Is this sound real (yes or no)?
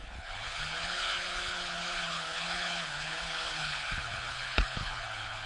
no